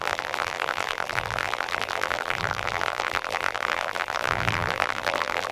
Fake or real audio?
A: fake